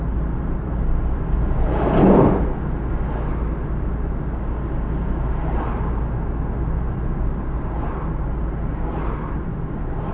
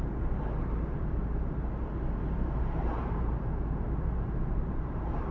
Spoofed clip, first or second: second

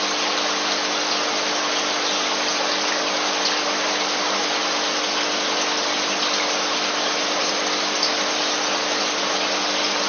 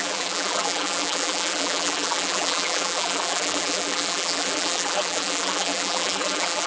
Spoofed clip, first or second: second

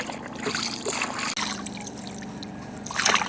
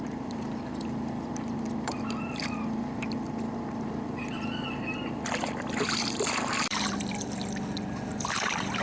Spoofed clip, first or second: second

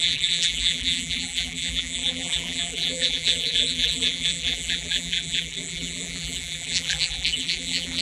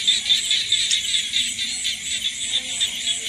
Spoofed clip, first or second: first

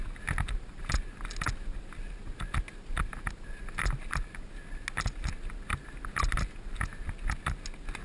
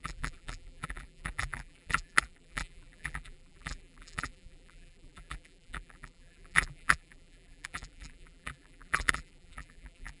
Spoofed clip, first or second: second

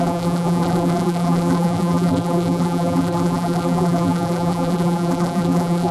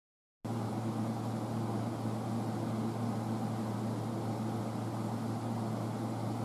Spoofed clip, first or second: first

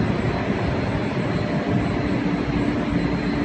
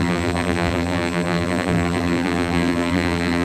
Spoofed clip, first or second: second